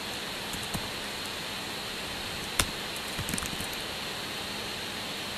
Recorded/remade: remade